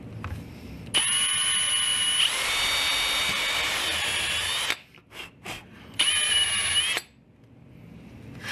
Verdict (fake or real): real